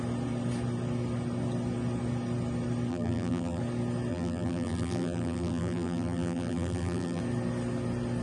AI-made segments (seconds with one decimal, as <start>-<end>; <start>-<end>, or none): 2.9-3.6; 4.1-7.2